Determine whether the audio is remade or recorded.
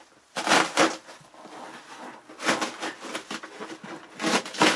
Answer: recorded